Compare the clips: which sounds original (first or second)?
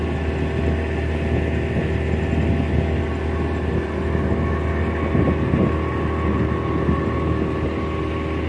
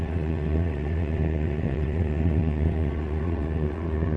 first